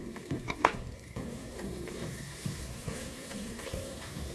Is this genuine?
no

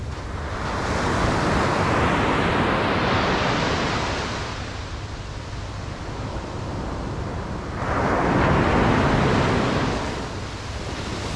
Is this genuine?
yes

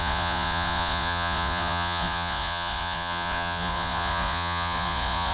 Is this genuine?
no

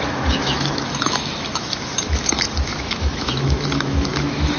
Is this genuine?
no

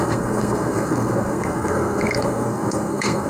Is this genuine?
no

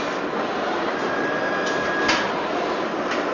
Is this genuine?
yes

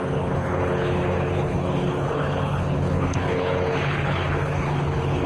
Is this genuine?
no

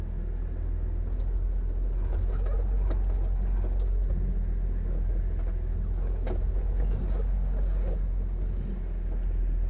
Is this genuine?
yes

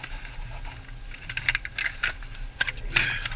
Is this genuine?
yes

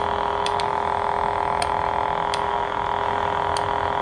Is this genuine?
yes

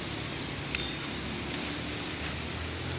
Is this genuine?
yes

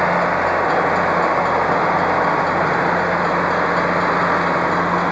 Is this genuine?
yes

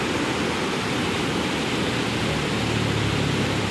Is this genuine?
yes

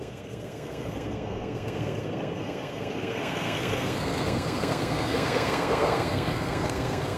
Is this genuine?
no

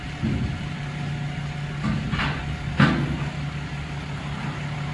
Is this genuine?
yes